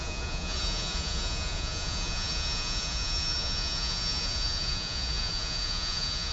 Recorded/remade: remade